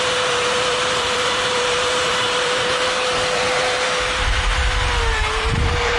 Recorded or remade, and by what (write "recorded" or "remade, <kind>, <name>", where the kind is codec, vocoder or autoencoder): remade, vocoder, BigVGAN v2